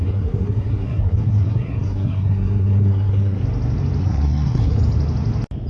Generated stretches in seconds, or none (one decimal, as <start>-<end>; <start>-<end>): 0.0-3.4; 4.0-4.8